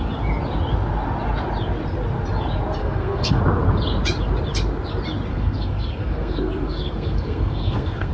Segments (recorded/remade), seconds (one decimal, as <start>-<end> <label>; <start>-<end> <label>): 0.0-2.8 recorded; 2.8-3.4 remade; 3.4-5.3 recorded; 5.3-8.1 remade